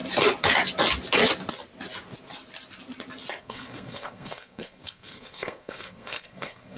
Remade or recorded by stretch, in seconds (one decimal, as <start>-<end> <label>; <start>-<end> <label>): 0.0-3.4 recorded; 3.4-6.8 remade